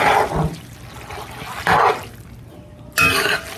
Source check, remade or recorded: recorded